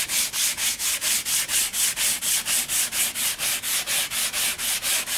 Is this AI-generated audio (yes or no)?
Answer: no